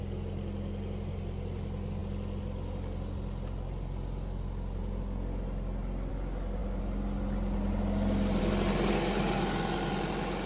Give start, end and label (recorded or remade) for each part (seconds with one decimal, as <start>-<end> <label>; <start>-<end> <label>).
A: 0.0-10.5 recorded